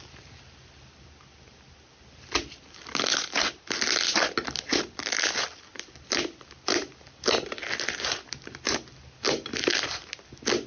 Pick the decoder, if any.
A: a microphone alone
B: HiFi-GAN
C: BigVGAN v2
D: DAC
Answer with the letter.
A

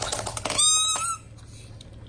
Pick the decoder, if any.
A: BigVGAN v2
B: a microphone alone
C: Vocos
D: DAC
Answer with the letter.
B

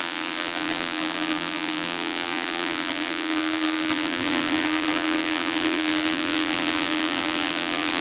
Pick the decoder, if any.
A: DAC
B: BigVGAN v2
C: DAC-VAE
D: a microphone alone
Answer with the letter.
B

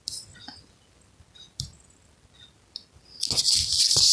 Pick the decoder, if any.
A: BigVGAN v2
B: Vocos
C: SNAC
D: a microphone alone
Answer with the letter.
D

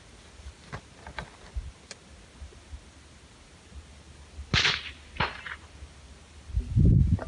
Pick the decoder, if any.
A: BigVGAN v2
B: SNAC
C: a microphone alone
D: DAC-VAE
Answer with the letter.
C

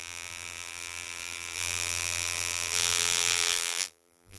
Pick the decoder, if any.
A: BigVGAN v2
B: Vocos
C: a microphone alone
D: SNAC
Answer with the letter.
A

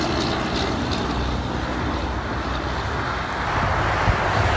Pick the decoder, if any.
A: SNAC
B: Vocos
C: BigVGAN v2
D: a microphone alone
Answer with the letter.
D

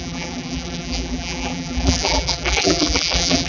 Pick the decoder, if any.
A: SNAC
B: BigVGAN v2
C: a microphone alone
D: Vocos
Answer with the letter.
B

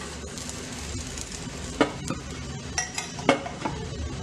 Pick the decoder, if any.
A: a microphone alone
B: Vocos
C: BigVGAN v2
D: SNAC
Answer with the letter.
A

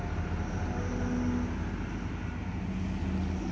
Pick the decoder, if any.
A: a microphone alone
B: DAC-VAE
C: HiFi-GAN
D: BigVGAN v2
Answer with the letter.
A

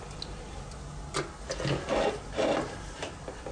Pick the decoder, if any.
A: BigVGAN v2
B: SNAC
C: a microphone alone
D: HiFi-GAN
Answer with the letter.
C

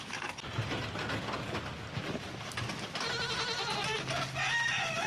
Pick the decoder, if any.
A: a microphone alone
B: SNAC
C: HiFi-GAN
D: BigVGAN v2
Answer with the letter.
A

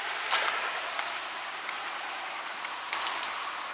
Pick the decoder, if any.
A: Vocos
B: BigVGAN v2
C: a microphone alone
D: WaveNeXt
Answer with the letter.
B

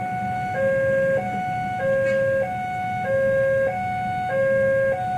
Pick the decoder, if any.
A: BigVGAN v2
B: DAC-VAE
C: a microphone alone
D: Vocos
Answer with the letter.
C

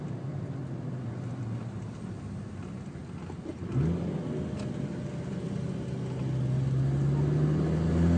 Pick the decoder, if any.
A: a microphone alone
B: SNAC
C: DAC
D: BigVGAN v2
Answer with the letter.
A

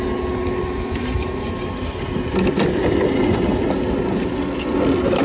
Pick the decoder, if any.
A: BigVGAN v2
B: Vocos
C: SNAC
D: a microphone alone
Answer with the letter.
D